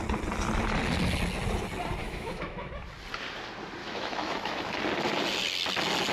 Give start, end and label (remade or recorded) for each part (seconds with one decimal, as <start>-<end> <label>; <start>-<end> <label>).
0.0-2.0 recorded; 2.0-2.7 remade; 2.7-3.8 recorded; 3.8-4.7 remade; 4.7-6.1 recorded